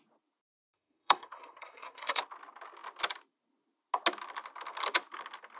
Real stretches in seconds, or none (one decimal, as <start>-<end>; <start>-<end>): 0.0-0.5; 2.2-5.6